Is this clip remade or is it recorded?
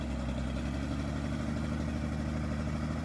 recorded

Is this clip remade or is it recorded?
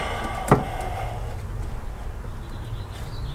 recorded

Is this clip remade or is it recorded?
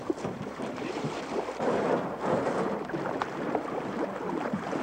remade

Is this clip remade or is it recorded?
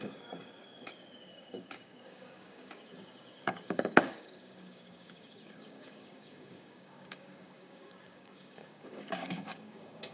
remade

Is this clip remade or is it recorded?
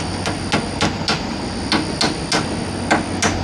recorded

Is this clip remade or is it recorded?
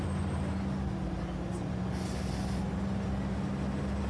recorded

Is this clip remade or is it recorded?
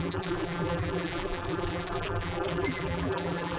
remade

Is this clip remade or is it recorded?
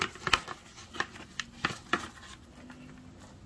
recorded